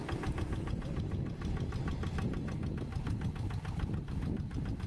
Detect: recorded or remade recorded